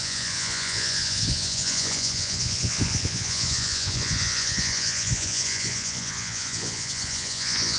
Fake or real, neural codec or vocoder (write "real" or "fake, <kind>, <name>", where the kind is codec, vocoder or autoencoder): fake, vocoder, Vocos